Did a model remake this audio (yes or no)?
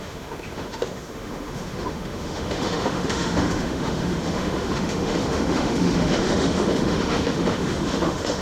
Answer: yes